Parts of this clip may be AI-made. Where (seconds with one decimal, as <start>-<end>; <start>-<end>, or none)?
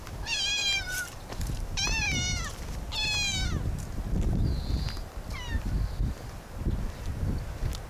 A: 0.6-2.0